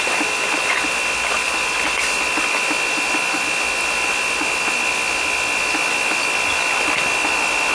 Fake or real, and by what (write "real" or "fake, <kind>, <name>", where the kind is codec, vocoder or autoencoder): real